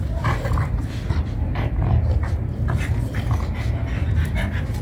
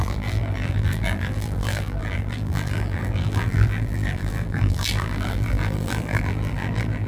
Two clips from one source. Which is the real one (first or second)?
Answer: first